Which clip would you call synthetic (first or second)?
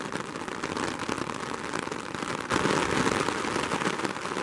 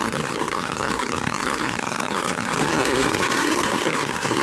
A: second